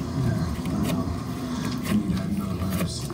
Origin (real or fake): fake